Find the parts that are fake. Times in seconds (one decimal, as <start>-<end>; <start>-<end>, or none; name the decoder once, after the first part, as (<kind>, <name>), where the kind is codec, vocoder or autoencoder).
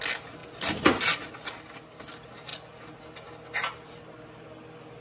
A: none